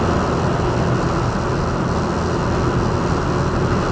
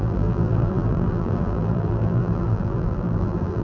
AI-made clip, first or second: second